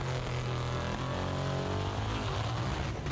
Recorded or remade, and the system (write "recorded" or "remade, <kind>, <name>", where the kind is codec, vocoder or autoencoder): recorded